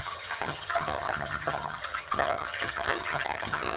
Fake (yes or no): yes